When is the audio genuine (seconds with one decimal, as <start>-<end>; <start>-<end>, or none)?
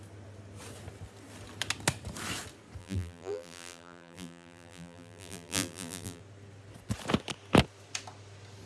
0.0-2.8; 6.2-8.7